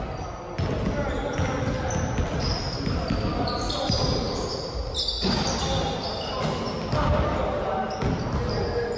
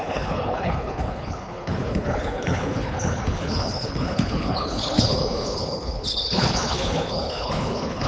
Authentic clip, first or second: first